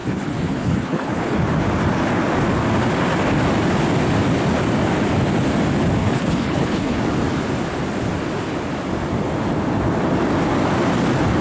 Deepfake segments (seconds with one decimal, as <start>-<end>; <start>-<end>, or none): 0.0-1.4; 6.0-7.0